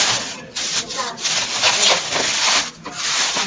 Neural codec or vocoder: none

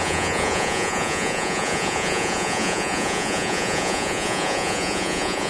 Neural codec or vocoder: vocoder, Vocos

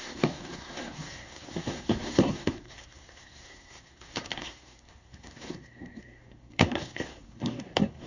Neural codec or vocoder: codec, SNAC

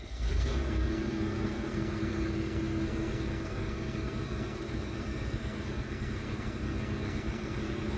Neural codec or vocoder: codec, SNAC